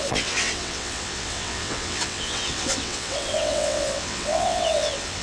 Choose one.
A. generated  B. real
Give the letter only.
A